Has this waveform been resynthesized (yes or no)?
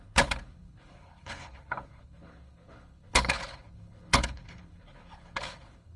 yes